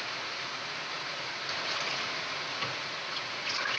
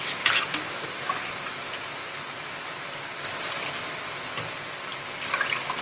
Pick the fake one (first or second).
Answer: first